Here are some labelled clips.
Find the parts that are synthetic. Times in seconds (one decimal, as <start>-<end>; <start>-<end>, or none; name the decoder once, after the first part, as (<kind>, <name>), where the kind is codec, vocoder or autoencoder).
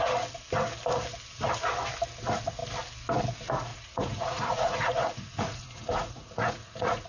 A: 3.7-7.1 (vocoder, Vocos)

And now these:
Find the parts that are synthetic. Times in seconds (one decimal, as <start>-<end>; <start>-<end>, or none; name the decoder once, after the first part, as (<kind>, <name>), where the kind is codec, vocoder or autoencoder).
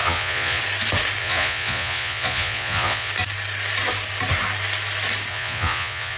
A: 0.0-0.6 (vocoder, Vocos); 1.2-3.1; 5.3-6.2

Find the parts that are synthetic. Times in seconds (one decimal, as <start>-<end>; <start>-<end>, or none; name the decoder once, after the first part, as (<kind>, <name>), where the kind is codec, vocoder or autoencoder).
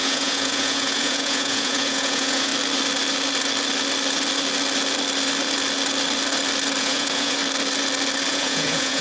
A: 0.0-2.5 (vocoder, Vocos); 6.8-7.4; 8.3-9.0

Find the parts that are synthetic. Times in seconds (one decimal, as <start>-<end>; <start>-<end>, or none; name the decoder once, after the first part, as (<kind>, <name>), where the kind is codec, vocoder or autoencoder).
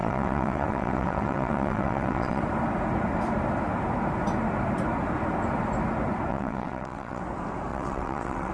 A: 0.0-2.4 (vocoder, WaveNeXt); 6.3-7.2; 7.7-8.5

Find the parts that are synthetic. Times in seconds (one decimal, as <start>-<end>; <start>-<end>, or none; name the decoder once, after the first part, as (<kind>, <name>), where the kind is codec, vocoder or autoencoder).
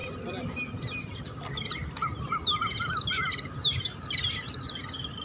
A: none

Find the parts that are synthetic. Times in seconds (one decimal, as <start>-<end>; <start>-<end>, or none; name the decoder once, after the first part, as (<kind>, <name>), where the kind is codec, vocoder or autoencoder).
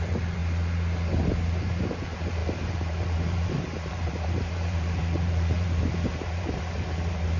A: 0.0-0.4 (vocoder, BigVGAN v2); 1.8-7.4